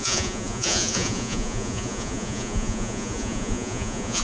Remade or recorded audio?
remade